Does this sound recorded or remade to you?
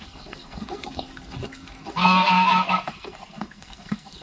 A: remade